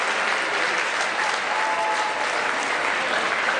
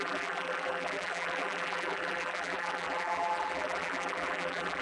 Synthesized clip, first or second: second